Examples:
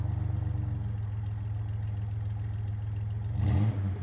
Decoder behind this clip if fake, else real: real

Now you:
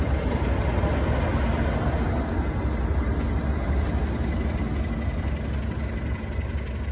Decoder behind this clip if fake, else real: real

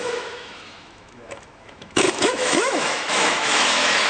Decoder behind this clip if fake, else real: fake, autoencoder, DAC-VAE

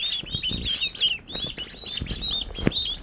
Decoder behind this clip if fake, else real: real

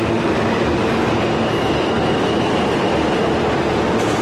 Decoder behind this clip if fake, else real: real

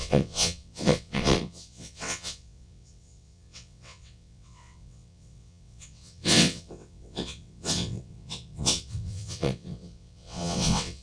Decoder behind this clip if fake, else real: fake, vocoder, WaveNeXt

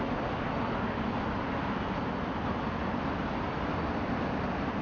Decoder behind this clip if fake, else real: real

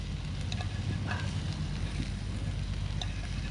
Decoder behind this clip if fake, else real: real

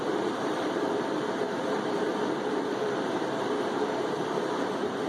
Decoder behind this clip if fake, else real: fake, vocoder, BigVGAN v2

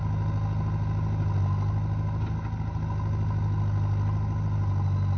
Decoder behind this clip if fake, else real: real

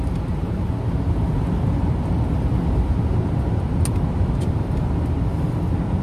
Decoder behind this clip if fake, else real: real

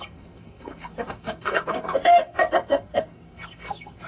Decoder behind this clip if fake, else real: fake, codec, SNAC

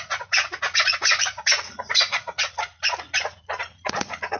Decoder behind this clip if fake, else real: fake, vocoder, Vocos